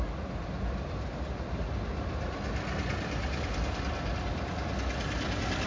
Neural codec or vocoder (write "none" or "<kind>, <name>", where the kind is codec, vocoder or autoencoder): none